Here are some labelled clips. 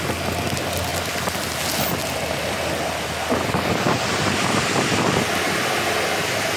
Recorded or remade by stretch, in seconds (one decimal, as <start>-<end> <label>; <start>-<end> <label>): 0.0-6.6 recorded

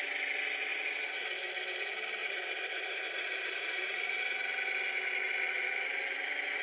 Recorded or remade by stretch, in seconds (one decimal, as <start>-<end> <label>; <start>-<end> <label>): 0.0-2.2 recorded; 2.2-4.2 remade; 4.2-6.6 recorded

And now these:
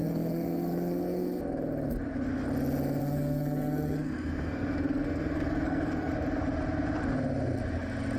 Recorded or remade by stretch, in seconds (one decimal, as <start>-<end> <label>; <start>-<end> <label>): 0.0-1.4 remade; 1.4-3.0 recorded; 3.0-6.1 remade; 6.1-8.2 recorded

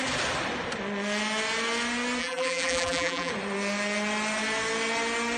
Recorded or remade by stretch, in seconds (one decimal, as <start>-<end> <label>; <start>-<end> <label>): 0.0-2.2 recorded; 2.2-3.3 remade; 3.3-5.4 recorded

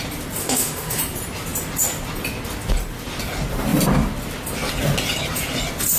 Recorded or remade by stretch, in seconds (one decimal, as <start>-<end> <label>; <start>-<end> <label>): 0.0-0.4 recorded; 0.4-1.0 remade; 1.0-6.0 recorded

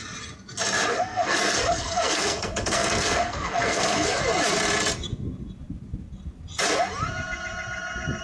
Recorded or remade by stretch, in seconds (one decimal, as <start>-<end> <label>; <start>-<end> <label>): 0.0-0.9 recorded; 0.9-4.2 remade; 4.2-8.2 recorded

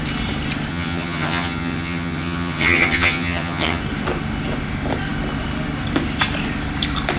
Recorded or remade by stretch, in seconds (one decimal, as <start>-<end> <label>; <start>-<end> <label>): 0.0-0.7 recorded; 0.7-3.8 remade; 3.8-7.2 recorded